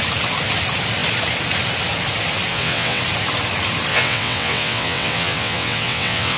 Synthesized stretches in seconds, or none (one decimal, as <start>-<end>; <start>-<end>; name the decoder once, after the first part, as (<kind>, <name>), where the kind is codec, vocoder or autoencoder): 2.5-3.0 (vocoder, WaveNeXt); 3.9-6.4